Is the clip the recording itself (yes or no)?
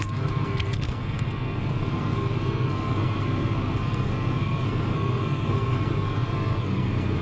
no